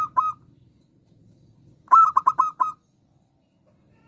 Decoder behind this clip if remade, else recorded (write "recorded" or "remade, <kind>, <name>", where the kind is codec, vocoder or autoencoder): recorded